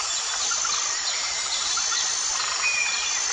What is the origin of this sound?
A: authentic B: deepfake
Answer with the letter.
A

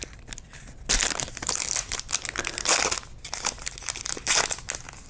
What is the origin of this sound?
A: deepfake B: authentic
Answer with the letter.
B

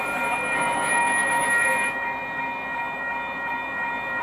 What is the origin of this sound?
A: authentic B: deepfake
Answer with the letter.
A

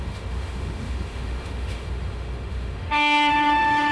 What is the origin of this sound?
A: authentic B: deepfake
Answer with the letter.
B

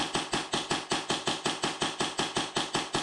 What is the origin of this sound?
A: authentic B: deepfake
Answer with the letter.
A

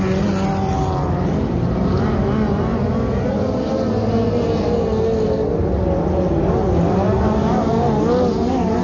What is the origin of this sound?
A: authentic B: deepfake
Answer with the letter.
A